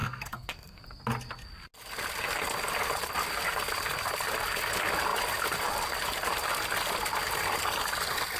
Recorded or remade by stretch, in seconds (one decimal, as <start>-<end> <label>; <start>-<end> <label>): 0.0-0.8 remade; 0.8-8.4 recorded